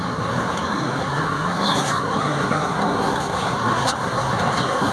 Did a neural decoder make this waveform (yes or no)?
yes